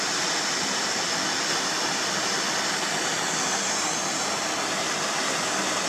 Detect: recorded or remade recorded